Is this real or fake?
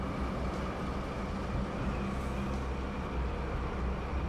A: real